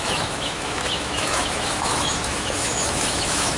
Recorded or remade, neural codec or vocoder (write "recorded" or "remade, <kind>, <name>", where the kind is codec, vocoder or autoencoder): remade, autoencoder, DAC-VAE